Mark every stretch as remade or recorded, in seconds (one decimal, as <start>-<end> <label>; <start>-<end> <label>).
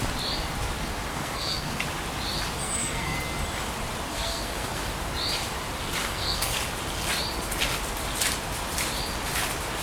0.0-1.1 recorded; 1.1-1.8 remade; 1.8-2.6 recorded; 2.6-3.2 remade; 3.2-4.1 recorded; 4.1-4.8 remade; 4.8-6.0 recorded; 6.0-6.6 remade; 6.6-9.8 recorded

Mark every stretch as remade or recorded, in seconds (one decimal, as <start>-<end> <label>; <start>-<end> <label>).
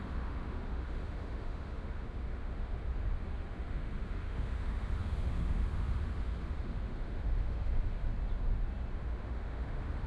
0.0-2.8 remade; 2.8-3.5 recorded; 3.5-8.1 remade; 8.1-9.0 recorded; 9.0-10.1 remade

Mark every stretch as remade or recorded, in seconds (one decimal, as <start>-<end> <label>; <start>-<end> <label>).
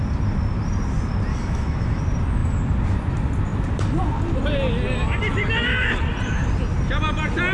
0.0-1.3 recorded; 1.3-2.0 remade; 2.0-7.5 recorded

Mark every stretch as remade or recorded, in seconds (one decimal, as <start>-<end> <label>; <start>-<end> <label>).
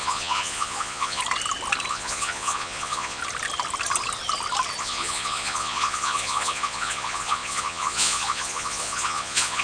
0.0-1.2 remade; 1.2-1.9 recorded; 1.9-3.2 remade; 3.2-4.8 recorded; 4.8-9.6 remade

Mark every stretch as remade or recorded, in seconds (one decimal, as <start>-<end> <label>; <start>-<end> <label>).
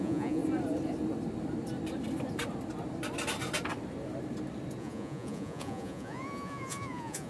0.0-0.4 remade; 0.4-4.8 recorded; 4.8-7.3 remade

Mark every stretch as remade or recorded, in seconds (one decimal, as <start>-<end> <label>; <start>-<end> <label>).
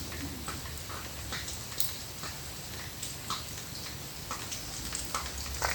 0.0-5.7 recorded